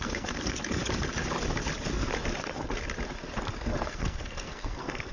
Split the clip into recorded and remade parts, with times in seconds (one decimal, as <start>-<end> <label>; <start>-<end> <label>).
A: 0.0-0.8 remade; 0.8-3.6 recorded; 3.6-5.1 remade